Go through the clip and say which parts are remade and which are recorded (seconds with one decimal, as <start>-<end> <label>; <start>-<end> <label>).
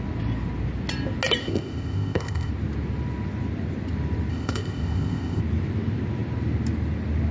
0.0-1.4 recorded; 1.4-2.5 remade; 2.5-4.3 recorded; 4.3-5.4 remade; 5.4-7.3 recorded